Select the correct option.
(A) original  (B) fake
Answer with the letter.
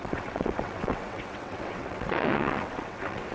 B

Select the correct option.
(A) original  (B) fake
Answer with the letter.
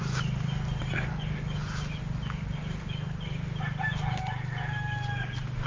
A